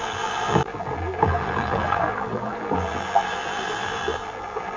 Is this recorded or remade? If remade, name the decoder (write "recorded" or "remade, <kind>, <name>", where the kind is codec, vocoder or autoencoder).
remade, vocoder, BigVGAN v2